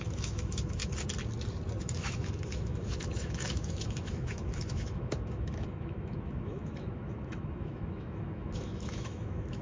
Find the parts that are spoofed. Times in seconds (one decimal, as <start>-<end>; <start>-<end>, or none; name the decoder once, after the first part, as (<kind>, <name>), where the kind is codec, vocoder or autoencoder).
0.0-0.8 (autoencoder, DAC-VAE); 1.8-9.6